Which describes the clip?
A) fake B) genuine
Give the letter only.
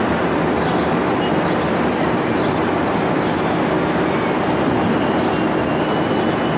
B